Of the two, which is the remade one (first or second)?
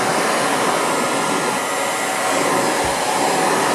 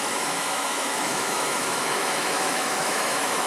second